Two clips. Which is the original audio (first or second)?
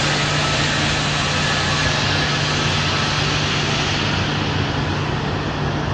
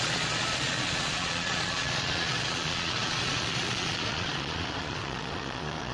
first